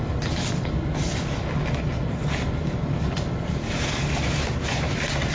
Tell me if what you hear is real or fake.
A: real